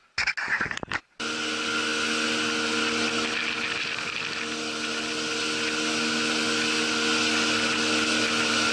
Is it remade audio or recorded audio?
recorded